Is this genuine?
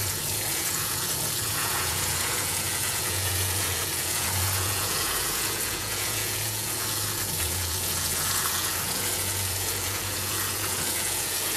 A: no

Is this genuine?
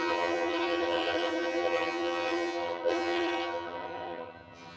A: no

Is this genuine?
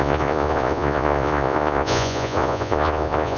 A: no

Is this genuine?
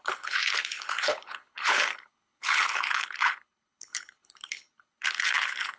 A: no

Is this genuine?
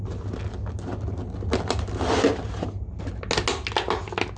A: yes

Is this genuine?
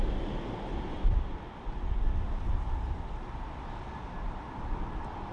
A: yes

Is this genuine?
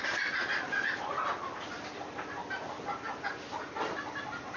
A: yes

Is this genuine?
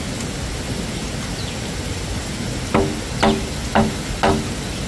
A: yes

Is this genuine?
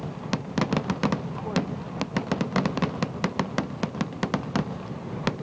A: yes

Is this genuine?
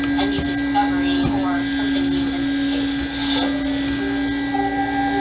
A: yes